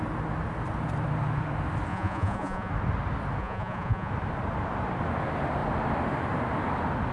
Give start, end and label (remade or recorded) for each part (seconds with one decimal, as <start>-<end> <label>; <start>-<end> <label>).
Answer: 0.0-1.9 recorded; 1.9-2.7 remade; 2.7-3.4 recorded; 3.4-4.1 remade; 4.1-7.1 recorded